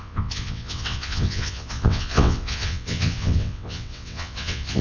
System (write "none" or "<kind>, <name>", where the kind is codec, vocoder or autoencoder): vocoder, WaveNeXt